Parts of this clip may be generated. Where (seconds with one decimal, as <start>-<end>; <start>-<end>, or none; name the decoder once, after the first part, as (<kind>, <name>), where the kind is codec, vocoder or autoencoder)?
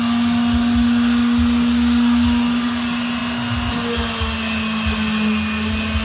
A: none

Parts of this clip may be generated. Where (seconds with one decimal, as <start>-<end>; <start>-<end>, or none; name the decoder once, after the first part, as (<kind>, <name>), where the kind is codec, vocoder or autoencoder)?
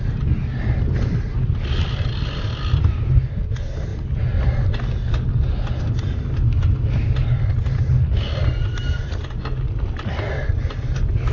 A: none